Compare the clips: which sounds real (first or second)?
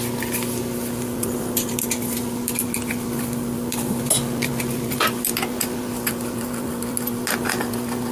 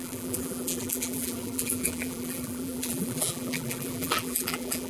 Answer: first